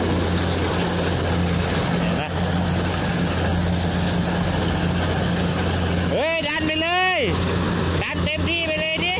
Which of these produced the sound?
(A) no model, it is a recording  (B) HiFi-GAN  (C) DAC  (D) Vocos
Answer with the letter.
A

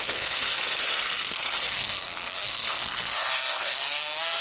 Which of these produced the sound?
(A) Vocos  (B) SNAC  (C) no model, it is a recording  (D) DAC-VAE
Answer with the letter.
B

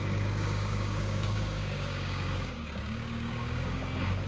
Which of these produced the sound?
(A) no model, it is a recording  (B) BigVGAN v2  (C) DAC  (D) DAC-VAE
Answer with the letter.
C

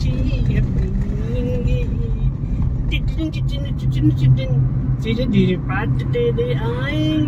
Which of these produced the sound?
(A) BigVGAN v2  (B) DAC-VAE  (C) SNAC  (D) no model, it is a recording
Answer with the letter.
D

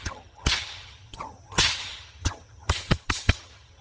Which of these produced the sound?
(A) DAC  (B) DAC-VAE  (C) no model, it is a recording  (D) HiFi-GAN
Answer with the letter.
D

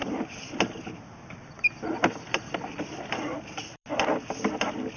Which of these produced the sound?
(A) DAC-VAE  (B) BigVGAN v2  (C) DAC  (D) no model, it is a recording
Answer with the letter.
D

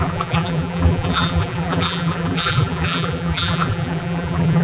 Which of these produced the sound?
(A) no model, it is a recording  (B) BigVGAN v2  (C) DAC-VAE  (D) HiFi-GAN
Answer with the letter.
B